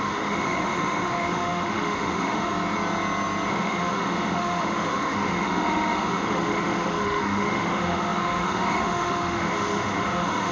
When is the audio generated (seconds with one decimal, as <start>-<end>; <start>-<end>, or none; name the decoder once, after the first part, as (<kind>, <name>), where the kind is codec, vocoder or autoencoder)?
0.0-2.5 (autoencoder, DAC-VAE); 3.5-10.5